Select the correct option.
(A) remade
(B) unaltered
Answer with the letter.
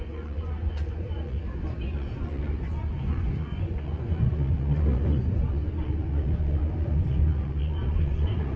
A